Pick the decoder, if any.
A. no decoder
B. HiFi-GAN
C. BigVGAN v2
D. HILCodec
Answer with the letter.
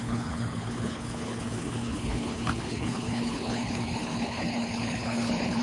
D